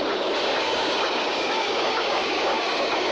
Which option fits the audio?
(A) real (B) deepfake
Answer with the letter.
B